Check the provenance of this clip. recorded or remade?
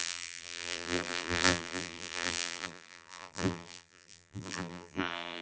remade